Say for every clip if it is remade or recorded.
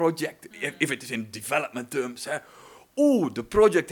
recorded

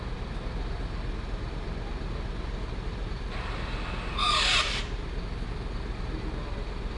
recorded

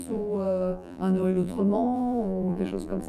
remade